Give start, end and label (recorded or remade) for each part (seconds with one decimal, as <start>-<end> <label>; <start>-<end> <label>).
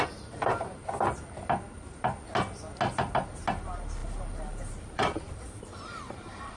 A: 0.0-0.8 remade; 0.8-3.5 recorded; 3.5-6.6 remade